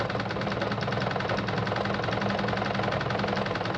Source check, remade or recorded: recorded